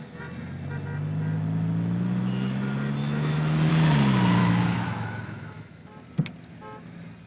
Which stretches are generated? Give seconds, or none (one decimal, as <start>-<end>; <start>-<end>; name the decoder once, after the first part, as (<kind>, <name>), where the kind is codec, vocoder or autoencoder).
3.0-3.7 (autoencoder, DAC-VAE); 4.4-5.9

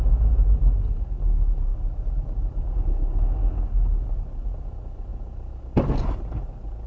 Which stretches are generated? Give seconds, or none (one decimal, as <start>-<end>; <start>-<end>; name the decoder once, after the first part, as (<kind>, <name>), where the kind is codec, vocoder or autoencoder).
none

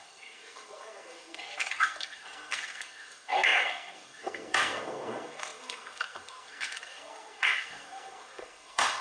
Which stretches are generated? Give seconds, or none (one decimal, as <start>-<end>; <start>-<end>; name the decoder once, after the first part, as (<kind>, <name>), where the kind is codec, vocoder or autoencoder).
0.0-9.0 (codec, SNAC)